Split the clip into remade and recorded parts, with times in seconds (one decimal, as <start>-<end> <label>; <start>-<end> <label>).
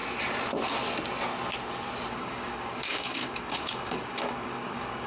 0.0-2.1 recorded; 2.1-5.1 remade